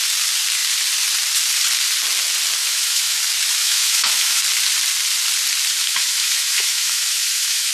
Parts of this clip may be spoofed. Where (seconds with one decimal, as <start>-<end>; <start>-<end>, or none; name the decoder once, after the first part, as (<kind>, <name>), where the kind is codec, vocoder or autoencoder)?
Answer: 2.6-3.2 (autoencoder, DAC-VAE); 3.6-4.4; 5.8-7.7